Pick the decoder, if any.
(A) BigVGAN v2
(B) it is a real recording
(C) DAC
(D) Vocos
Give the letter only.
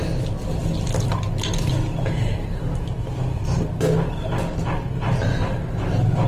A